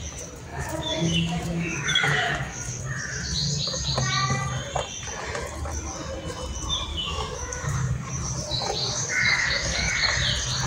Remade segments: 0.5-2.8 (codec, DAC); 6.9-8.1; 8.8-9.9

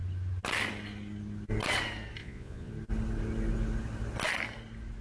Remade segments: 2.2-2.7 (vocoder, Vocos)

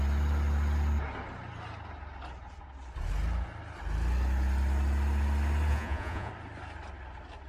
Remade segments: 5.7-6.3 (vocoder, Vocos)

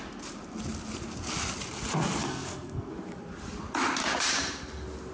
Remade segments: 2.2-2.9 (codec, SNAC)

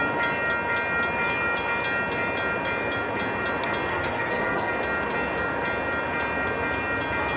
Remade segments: 3.9-4.7 (codec, SNAC)

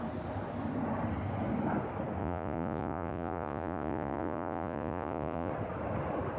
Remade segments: 2.2-5.5 (vocoder, Vocos)

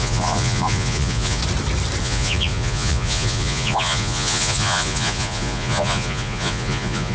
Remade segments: 0.0-1.4 (vocoder, Vocos); 2.0-7.1